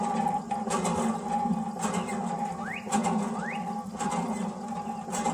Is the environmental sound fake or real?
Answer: real